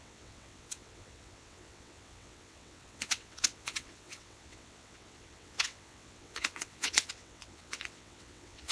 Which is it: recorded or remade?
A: remade